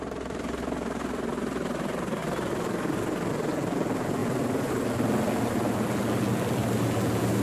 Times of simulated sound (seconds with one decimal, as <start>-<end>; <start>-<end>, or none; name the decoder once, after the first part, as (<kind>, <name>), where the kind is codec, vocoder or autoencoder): none